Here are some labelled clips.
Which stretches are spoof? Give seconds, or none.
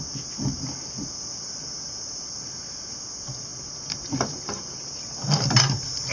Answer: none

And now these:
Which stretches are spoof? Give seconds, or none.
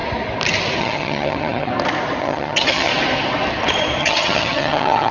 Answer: 0.8-1.7 (vocoder, HiFi-GAN); 2.2-2.9; 4.0-5.1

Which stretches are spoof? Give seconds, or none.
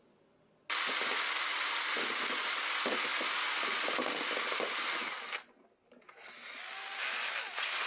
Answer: none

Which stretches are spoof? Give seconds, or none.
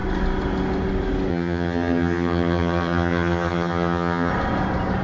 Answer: 1.3-4.3 (vocoder, HiFi-GAN)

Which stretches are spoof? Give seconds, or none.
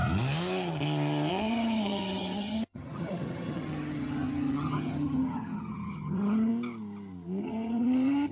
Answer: 1.3-6.5 (vocoder, HiFi-GAN); 7.4-8.3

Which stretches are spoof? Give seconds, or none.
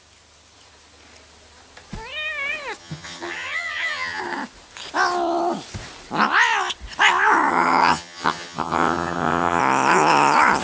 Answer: 2.8-4.2 (vocoder, HiFi-GAN); 7.5-9.6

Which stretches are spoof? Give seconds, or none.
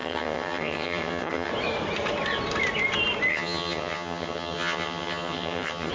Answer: 0.0-1.5 (vocoder, HiFi-GAN); 3.3-5.9